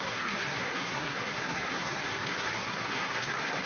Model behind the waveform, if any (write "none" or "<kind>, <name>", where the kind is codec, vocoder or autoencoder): codec, SNAC